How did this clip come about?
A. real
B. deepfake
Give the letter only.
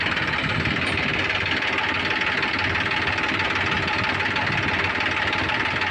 A